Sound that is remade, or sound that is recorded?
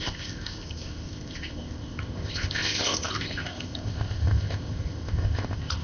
remade